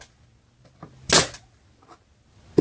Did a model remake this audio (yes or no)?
no